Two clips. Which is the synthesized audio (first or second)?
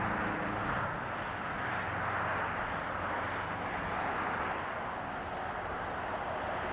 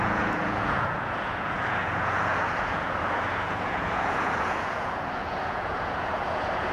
second